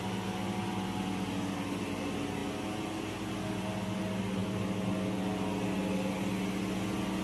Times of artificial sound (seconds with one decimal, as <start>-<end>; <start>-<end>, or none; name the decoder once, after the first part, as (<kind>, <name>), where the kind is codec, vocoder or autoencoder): none